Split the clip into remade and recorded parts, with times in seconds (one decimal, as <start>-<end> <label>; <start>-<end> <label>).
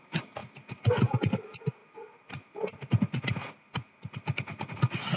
0.0-5.2 recorded